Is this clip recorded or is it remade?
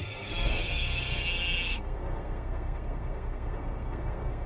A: remade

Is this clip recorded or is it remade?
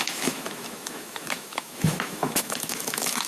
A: remade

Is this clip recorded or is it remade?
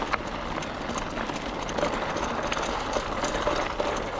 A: recorded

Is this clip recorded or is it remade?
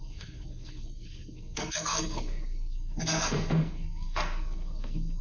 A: remade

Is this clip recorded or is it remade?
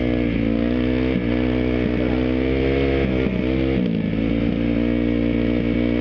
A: recorded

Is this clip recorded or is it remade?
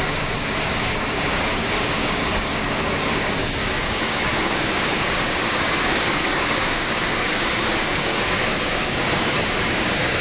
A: remade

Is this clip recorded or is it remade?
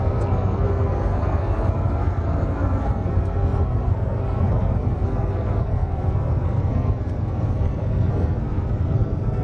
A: remade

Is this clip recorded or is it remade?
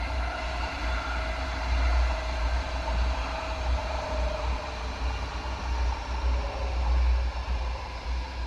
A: recorded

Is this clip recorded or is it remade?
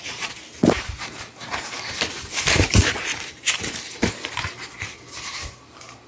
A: remade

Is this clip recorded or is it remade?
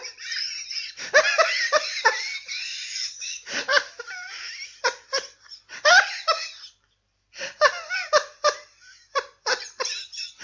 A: remade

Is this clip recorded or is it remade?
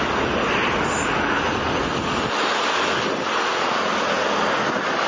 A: recorded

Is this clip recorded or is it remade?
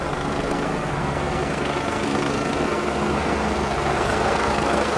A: remade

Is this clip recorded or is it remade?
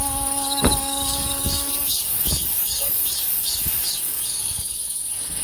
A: remade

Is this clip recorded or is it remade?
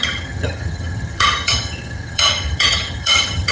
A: remade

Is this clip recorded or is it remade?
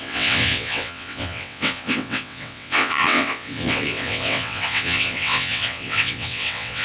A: remade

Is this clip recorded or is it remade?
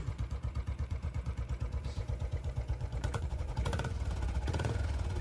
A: remade